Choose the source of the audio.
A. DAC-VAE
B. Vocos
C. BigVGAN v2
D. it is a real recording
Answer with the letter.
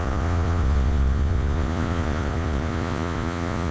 B